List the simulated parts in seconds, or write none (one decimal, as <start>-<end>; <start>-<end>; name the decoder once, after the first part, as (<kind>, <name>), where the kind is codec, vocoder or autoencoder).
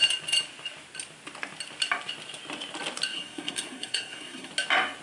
3.1-4.5 (codec, SNAC)